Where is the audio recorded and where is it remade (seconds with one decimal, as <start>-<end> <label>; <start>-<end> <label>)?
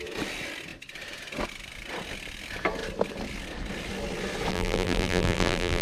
0.0-4.5 recorded; 4.5-5.8 remade